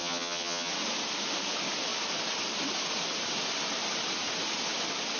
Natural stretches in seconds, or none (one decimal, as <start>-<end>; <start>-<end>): 0.7-5.2